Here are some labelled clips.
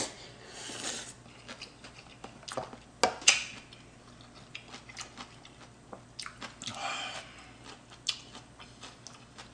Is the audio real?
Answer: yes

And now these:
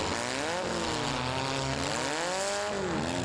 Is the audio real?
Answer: yes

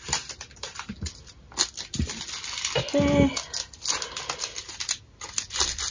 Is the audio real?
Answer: yes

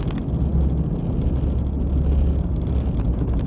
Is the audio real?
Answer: yes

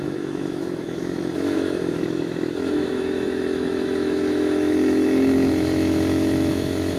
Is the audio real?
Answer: no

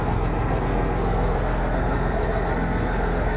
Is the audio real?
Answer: no